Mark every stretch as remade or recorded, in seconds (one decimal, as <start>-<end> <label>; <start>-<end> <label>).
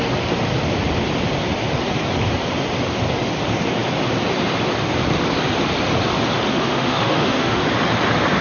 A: 0.0-6.5 recorded; 6.5-7.6 remade; 7.6-8.4 recorded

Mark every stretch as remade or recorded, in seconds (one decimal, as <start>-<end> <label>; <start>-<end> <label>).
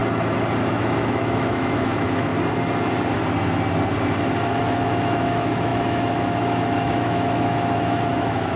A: 0.0-0.7 recorded; 0.7-2.3 remade; 2.3-4.6 recorded; 4.6-8.6 remade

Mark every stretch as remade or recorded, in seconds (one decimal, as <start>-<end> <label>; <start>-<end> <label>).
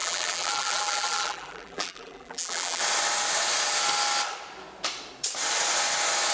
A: 0.0-2.8 remade; 2.8-6.3 recorded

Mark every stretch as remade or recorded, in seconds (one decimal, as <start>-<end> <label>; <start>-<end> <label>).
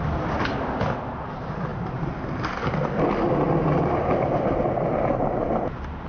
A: 0.0-6.1 recorded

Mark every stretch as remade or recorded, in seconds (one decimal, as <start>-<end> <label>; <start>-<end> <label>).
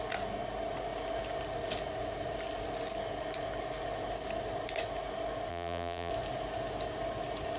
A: 0.0-5.5 recorded; 5.5-6.1 remade; 6.1-7.6 recorded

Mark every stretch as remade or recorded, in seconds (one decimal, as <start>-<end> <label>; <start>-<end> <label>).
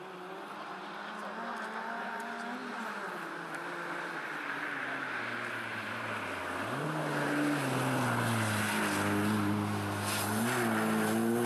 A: 0.0-11.5 recorded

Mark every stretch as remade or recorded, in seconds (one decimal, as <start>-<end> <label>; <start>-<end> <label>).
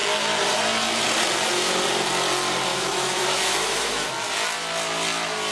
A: 0.0-2.7 recorded; 2.7-4.1 remade; 4.1-5.5 recorded